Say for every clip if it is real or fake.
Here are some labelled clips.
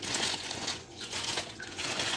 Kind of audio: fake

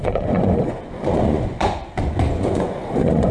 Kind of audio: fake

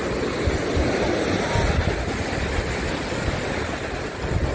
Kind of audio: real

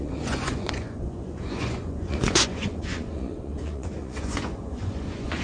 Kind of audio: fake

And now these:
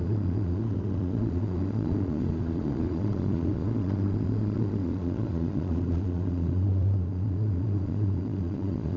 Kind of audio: fake